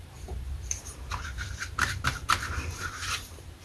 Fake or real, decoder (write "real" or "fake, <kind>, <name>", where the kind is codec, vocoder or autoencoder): fake, vocoder, BigVGAN v2